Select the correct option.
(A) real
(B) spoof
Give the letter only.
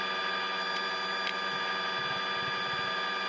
A